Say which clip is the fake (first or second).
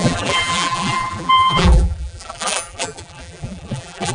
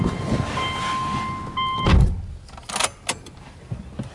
first